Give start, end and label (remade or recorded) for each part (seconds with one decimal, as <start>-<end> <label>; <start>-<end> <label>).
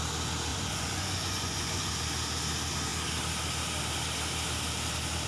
0.0-0.5 recorded; 0.5-1.9 remade; 1.9-5.3 recorded